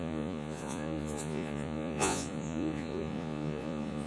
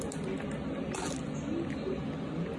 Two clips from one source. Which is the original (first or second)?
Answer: second